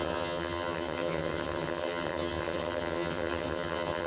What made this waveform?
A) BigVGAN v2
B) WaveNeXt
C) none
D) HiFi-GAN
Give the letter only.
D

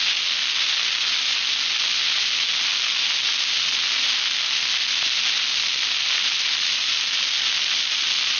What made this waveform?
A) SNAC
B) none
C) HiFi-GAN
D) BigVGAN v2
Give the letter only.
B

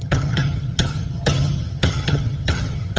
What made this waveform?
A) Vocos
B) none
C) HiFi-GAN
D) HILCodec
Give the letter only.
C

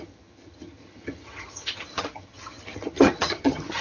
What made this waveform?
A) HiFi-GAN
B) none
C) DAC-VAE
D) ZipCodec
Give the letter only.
A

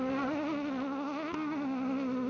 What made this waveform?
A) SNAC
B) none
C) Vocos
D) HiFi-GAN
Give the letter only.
B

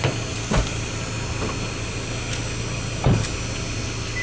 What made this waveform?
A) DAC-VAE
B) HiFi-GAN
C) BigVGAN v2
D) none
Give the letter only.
D